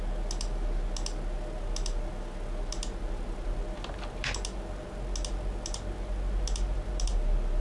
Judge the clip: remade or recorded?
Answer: recorded